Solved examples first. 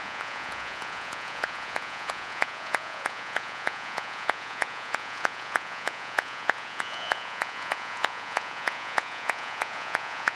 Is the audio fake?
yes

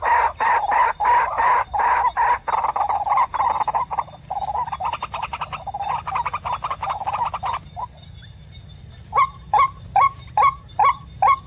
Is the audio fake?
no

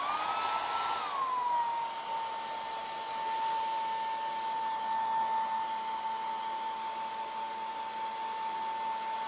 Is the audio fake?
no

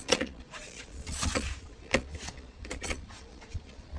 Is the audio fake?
yes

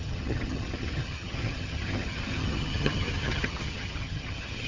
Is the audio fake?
yes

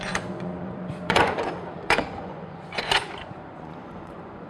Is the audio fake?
yes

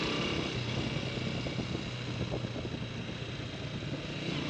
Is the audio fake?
no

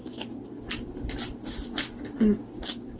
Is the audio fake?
no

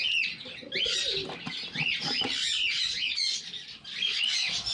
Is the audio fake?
no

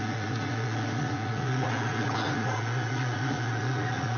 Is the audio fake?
yes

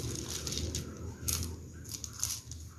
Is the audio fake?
no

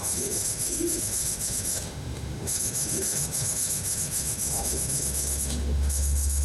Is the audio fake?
yes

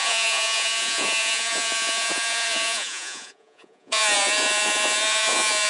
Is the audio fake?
yes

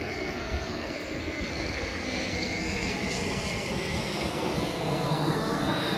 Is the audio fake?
yes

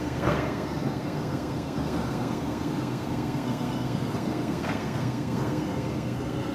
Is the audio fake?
yes